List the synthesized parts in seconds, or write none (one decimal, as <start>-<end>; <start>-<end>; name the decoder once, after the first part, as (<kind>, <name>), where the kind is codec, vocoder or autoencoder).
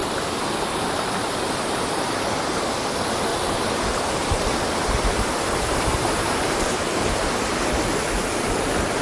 3.3-7.3 (vocoder, BigVGAN v2)